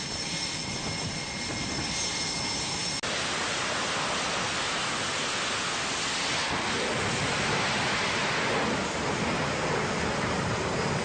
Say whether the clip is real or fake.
real